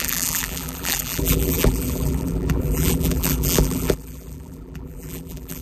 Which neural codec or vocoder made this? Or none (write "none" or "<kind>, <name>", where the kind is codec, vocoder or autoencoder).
vocoder, BigVGAN v2